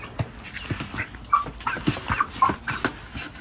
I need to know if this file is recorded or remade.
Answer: recorded